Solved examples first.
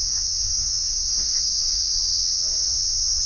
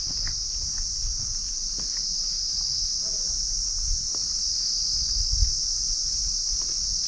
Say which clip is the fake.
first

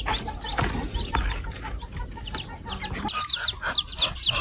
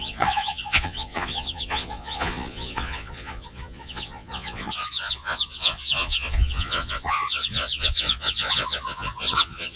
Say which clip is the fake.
second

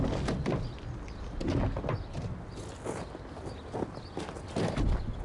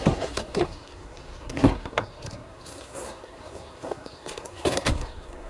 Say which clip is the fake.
second